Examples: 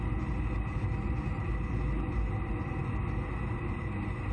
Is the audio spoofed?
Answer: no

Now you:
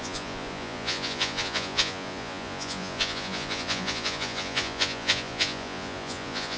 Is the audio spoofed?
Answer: yes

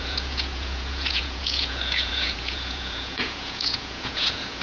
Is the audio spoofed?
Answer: yes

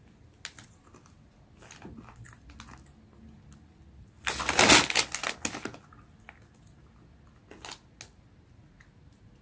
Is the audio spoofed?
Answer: no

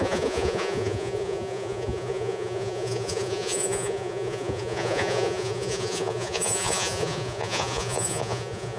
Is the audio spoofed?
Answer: yes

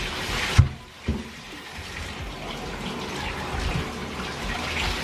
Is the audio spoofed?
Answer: no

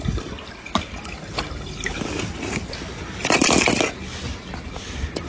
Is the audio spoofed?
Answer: no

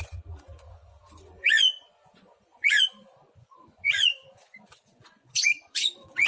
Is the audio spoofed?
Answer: yes